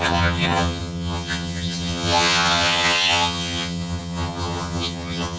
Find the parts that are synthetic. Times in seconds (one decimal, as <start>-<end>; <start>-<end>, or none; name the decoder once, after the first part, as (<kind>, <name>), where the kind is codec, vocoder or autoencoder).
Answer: 0.0-5.4 (vocoder, HiFi-GAN)